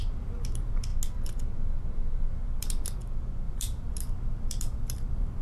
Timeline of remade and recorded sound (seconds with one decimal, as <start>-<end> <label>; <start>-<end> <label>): 0.0-0.9 remade; 0.9-2.6 recorded; 2.6-3.0 remade; 3.0-3.5 recorded; 3.5-5.4 remade